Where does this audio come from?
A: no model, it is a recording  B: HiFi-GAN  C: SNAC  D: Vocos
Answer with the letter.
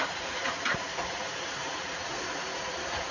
D